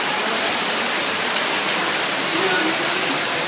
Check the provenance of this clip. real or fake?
fake